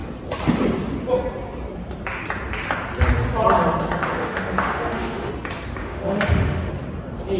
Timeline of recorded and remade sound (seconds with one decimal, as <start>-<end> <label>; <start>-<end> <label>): 0.0-4.2 recorded; 4.2-5.3 remade; 5.3-5.8 recorded; 5.8-6.7 remade; 6.7-7.4 recorded